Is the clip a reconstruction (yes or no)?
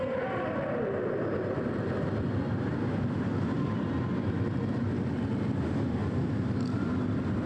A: yes